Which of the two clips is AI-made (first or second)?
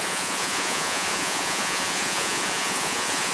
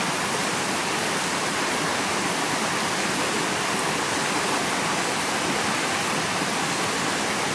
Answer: first